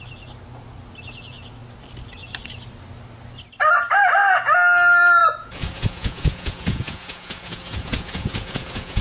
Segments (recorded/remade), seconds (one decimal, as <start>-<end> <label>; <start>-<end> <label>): 0.0-5.2 recorded; 5.2-9.0 remade